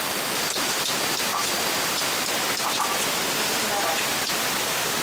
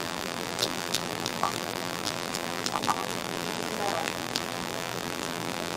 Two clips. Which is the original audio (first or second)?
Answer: first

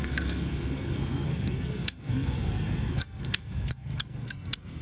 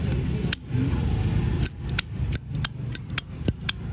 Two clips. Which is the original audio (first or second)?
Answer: second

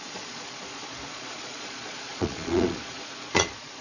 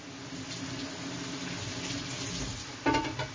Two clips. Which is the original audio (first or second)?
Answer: second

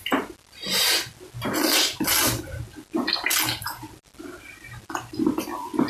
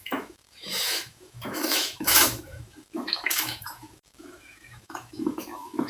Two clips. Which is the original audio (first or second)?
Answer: first